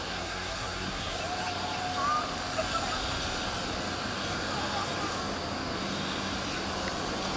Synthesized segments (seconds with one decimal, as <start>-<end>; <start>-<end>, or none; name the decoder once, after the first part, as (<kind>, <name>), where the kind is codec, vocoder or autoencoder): 0.0-1.2 (codec, SNAC)